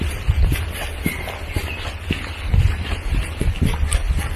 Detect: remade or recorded recorded